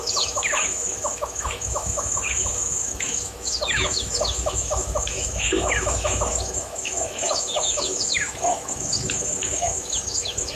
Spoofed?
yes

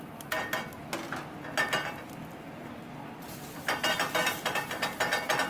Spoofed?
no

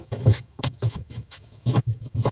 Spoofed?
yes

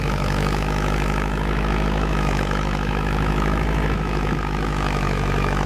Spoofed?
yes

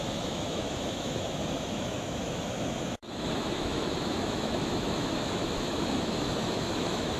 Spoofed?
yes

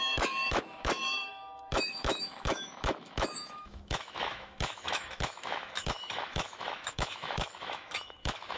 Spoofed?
yes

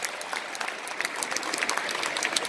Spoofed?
no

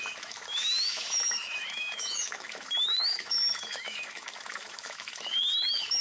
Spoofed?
yes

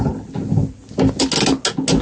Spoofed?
no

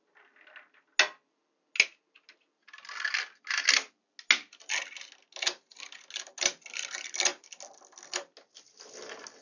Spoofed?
no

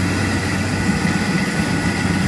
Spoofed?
no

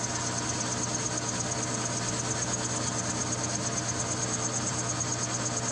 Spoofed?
no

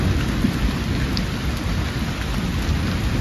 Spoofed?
no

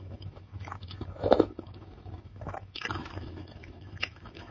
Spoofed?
yes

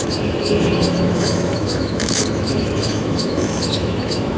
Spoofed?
yes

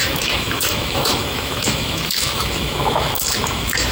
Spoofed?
yes